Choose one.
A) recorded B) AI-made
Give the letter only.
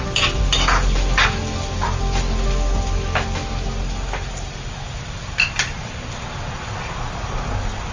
A